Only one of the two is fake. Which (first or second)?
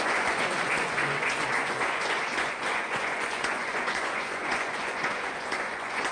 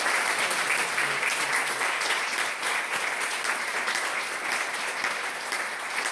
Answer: first